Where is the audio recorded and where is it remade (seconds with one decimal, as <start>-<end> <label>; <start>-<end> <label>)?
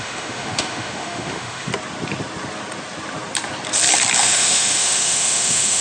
0.0-1.7 remade; 1.7-4.2 recorded; 4.2-5.8 remade